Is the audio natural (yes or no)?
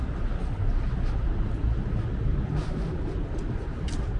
yes